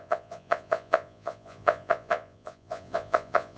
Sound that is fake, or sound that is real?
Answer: fake